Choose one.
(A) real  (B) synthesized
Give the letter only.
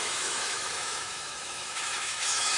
B